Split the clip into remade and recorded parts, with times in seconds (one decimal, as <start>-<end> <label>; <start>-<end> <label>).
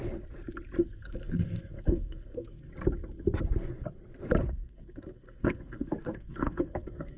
0.0-0.8 recorded; 0.8-2.7 remade; 2.7-4.4 recorded; 4.4-7.2 remade